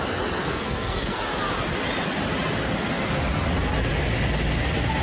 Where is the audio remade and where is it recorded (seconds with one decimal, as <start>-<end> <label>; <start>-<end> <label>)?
0.0-0.4 recorded; 0.4-1.2 remade; 1.2-5.0 recorded